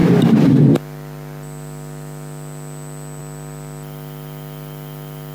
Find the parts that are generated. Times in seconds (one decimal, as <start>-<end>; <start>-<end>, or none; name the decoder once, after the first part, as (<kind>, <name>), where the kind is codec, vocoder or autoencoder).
none